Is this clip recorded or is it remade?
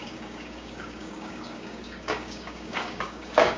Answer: remade